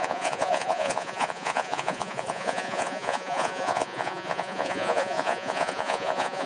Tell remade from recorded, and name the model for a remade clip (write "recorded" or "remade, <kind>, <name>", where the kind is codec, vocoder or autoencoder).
remade, vocoder, Vocos